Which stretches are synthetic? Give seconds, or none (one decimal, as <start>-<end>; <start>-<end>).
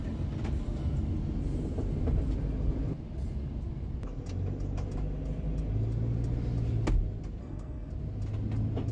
7.4-7.9